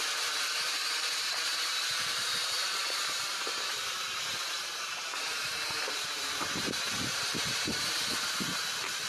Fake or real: fake